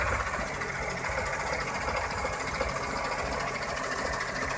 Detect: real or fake real